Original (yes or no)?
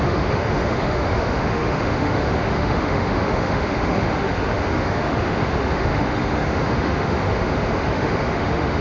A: no